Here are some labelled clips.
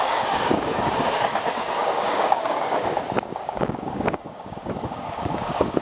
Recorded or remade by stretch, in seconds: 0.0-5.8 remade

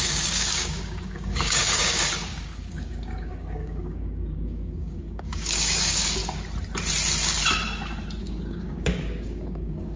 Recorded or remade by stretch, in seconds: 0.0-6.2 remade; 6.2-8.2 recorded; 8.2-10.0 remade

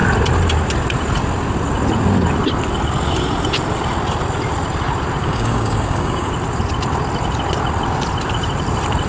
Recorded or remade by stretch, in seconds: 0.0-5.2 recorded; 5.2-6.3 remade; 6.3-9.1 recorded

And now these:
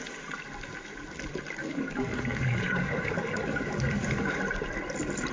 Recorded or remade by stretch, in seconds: 0.0-1.6 recorded; 1.6-4.4 remade; 4.4-5.3 recorded